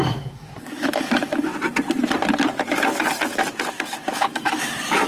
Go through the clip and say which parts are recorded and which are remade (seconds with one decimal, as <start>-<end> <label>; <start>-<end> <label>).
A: 0.0-1.5 remade; 1.5-3.7 recorded; 3.7-5.1 remade